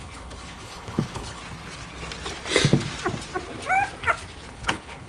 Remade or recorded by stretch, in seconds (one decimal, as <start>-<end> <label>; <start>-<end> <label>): 0.0-1.4 remade; 1.4-4.5 recorded; 4.5-5.1 remade